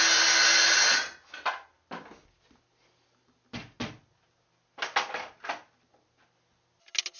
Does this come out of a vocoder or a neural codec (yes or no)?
no